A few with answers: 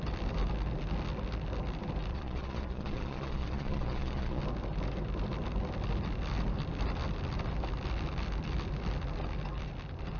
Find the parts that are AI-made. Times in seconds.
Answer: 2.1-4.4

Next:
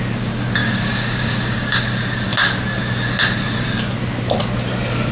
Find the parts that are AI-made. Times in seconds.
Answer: 0.6-1.8